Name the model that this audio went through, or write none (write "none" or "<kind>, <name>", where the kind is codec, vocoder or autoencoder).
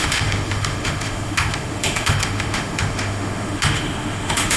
autoencoder, DAC-VAE